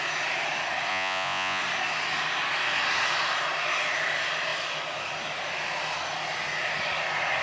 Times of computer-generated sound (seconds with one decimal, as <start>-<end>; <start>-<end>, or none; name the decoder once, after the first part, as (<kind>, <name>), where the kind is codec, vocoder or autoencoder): 0.9-1.6 (vocoder, Vocos)